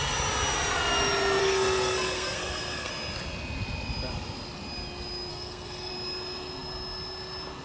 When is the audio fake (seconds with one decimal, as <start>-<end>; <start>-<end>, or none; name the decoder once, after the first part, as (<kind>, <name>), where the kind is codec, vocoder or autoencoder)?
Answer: 1.4-2.9 (codec, SNAC); 5.3-5.9